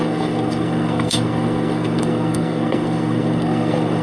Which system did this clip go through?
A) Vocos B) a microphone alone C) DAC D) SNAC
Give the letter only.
D